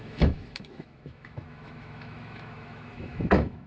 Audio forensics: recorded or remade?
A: remade